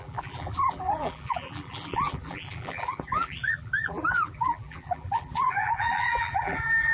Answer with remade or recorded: remade